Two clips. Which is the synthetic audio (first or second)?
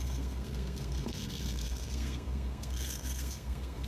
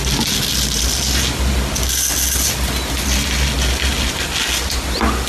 first